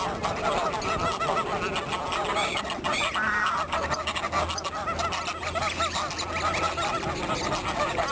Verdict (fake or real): real